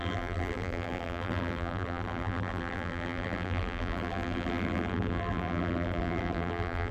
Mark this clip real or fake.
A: fake